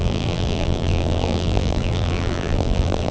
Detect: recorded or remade remade